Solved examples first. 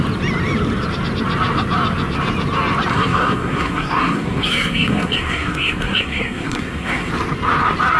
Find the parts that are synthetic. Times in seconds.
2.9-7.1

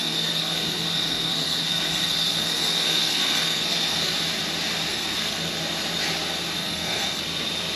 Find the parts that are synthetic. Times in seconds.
0.0-4.1; 4.9-5.6; 6.6-7.2

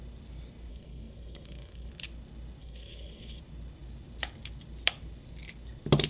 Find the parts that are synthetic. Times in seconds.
0.7-1.9; 2.6-3.4

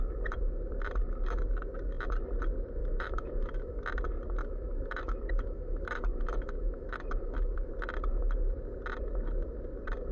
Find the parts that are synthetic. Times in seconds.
2.8-3.8; 4.4-7.7